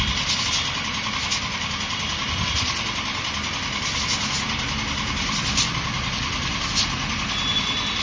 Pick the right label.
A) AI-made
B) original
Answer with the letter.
B